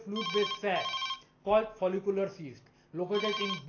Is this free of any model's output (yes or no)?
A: yes